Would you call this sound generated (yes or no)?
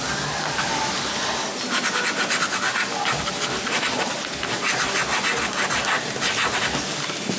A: no